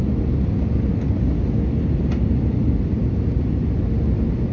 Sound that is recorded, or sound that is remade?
recorded